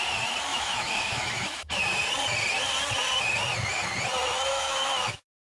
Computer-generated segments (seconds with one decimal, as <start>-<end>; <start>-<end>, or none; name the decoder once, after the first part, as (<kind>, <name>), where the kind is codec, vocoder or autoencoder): 0.5-1.8 (autoencoder, DAC-VAE); 4.5-5.5